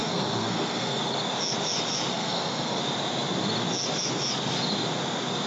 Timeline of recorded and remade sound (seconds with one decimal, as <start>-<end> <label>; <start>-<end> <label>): 0.0-1.0 remade; 1.0-2.1 recorded; 2.1-2.8 remade; 2.8-5.5 recorded